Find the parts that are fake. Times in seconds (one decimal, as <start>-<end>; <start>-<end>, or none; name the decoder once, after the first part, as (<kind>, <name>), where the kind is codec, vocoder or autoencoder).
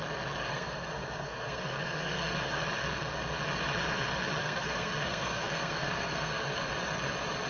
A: 0.4-2.6 (codec, SNAC); 4.4-6.7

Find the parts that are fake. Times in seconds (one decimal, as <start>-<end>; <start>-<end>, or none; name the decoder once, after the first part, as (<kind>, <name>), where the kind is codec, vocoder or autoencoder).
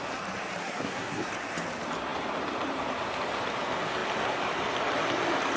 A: 0.6-1.3 (codec, SNAC)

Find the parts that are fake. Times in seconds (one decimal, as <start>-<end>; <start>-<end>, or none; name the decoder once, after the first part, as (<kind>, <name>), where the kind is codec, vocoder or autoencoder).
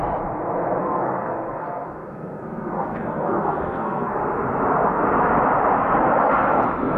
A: 0.8-4.2 (codec, SNAC)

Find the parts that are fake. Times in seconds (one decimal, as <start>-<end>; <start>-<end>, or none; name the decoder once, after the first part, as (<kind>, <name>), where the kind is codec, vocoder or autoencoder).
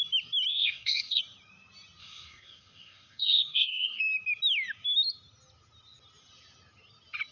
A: 0.5-1.2 (codec, SNAC); 2.0-4.0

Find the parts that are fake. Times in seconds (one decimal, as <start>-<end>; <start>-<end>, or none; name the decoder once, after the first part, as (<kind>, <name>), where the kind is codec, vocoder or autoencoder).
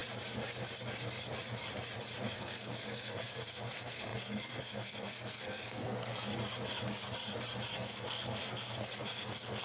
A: 2.3-6.3 (codec, SNAC); 7.7-9.6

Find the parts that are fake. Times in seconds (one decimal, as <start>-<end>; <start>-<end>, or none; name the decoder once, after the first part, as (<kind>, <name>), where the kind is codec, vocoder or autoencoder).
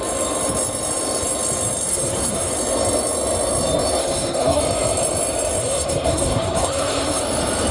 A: 1.9-2.5 (codec, SNAC); 4.0-4.6; 5.6-7.2